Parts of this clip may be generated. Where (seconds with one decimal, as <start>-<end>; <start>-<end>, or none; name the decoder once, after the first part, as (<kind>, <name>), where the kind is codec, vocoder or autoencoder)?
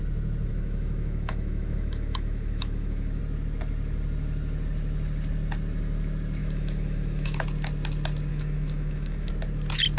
0.5-3.2 (autoencoder, DAC-VAE); 6.4-7.4; 8.3-9.3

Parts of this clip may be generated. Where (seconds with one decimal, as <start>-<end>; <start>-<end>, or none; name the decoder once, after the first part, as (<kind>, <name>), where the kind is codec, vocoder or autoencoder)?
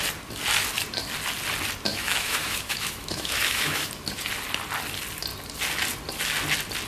1.9-3.9 (autoencoder, DAC-VAE)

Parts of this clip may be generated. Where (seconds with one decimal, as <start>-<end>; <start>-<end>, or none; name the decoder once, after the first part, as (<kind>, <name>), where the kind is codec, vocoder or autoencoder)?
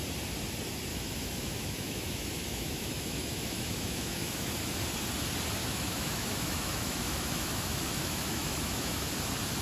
0.9-4.8 (autoencoder, DAC-VAE); 5.6-9.2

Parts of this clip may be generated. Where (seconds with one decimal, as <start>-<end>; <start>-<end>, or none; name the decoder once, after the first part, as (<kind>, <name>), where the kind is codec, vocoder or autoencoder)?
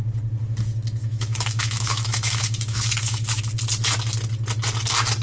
1.0-3.4 (autoencoder, DAC-VAE)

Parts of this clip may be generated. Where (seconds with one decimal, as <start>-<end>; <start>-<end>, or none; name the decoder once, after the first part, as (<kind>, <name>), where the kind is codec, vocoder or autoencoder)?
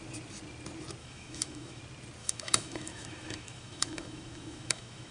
1.0-1.8 (autoencoder, DAC-VAE); 2.2-5.1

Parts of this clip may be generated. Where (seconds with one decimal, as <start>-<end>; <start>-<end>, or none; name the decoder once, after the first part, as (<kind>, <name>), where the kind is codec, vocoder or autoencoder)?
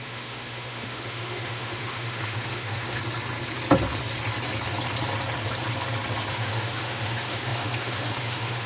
0.0-3.0 (autoencoder, DAC-VAE); 6.3-8.7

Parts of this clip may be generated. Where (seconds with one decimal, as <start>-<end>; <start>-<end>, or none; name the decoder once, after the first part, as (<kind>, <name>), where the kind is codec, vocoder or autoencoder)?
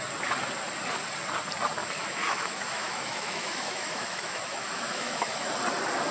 1.8-5.5 (autoencoder, DAC-VAE)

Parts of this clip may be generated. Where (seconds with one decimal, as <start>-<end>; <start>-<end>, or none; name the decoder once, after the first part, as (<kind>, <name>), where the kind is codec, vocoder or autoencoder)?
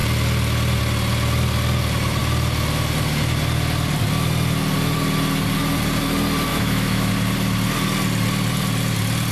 6.5-7.1 (autoencoder, DAC-VAE)